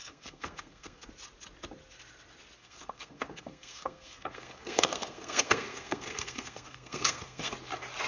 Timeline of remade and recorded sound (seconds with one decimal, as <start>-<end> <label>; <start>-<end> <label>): 0.0-1.1 remade; 1.1-2.6 recorded; 2.6-7.5 remade; 7.5-8.1 recorded